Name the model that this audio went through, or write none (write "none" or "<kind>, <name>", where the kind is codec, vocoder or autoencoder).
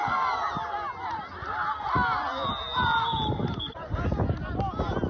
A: none